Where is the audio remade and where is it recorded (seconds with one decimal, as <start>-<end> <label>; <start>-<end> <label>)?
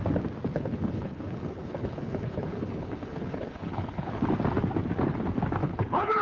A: 0.0-0.5 recorded; 0.5-4.2 remade; 4.2-5.6 recorded; 5.6-6.2 remade